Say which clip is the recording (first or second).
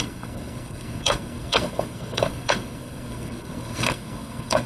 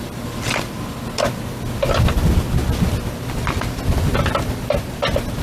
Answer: second